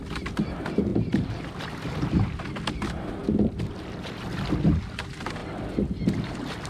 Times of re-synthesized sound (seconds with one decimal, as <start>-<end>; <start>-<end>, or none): 0.0-3.2; 3.7-6.7